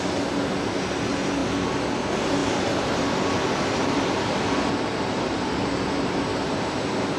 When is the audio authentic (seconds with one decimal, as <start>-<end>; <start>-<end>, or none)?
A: 0.0-1.4; 2.0-2.4; 6.7-7.2